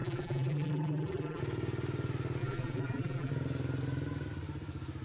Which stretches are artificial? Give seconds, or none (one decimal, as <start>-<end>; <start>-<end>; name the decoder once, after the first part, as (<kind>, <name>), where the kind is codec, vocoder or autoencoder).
0.0-1.4 (vocoder, BigVGAN v2); 2.4-3.3

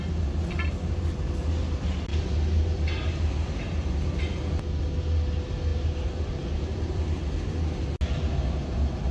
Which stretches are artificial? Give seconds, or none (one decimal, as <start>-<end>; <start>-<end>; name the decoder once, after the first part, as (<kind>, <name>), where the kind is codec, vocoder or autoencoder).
5.7-6.9 (vocoder, BigVGAN v2)